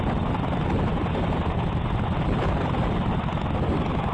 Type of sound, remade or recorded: recorded